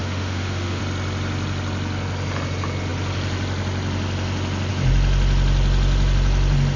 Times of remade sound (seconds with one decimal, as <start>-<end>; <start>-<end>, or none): 0.0-0.8